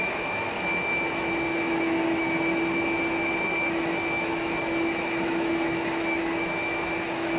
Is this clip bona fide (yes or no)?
no